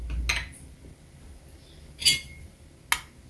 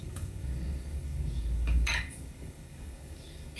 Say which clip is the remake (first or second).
second